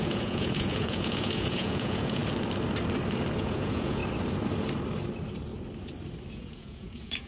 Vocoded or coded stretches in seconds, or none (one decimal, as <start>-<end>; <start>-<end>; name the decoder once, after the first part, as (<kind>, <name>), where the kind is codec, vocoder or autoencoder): 0.0-2.2 (vocoder, Vocos); 3.4-4.0; 6.3-7.3